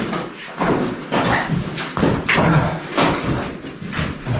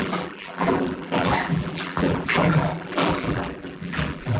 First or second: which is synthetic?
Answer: second